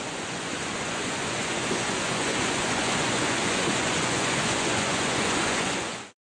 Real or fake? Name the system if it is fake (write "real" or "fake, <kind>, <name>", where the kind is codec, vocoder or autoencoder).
fake, vocoder, Vocos